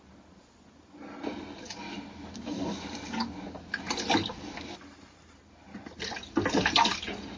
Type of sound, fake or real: real